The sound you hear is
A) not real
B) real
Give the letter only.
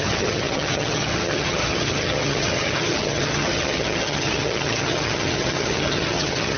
A